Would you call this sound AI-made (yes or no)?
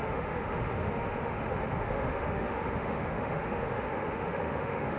yes